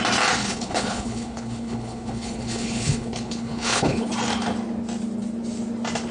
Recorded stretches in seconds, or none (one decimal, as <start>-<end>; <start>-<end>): 0.0-0.4; 4.1-6.1